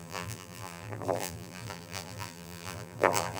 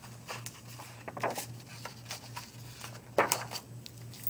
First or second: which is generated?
first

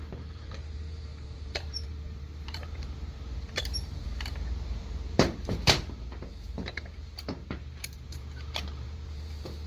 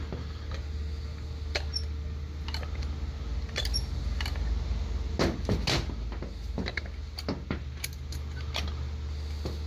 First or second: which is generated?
first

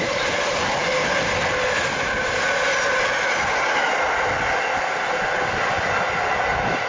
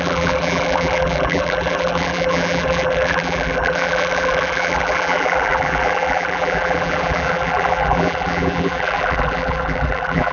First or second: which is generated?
second